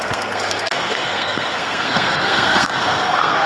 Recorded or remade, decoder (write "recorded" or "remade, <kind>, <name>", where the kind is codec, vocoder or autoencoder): remade, codec, SNAC